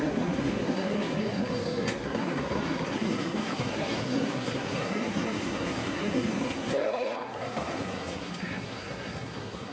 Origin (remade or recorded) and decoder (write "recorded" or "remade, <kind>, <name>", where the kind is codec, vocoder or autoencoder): remade, codec, SNAC